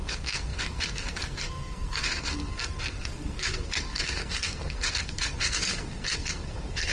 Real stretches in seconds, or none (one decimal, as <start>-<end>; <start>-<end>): none